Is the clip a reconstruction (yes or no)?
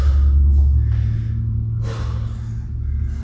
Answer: no